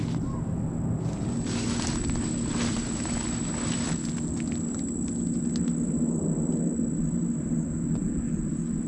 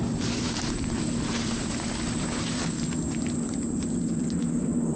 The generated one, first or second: second